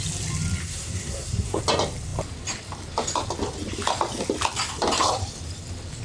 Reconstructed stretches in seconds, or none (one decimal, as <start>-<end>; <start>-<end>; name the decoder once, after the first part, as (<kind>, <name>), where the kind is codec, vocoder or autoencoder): 0.6-1.6 (codec, SNAC)